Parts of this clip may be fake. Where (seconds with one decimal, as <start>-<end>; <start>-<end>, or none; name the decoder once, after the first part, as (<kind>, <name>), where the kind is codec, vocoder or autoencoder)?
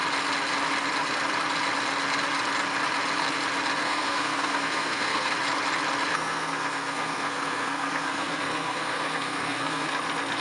3.8-5.3 (codec, SNAC); 6.1-9.9